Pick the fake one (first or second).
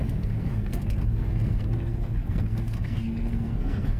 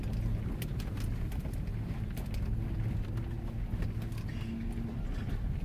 first